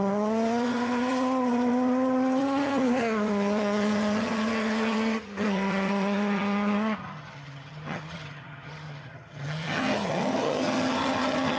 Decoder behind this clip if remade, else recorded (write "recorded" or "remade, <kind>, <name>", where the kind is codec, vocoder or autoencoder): remade, vocoder, HiFi-GAN